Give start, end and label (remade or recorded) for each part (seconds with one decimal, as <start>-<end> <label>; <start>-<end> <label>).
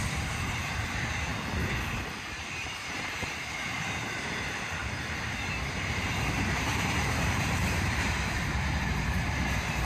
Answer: 0.0-1.3 remade; 1.3-2.1 recorded; 2.1-4.8 remade; 4.8-5.7 recorded; 5.7-9.8 remade